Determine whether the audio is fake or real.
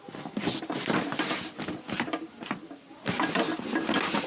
real